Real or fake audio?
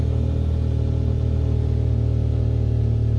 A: real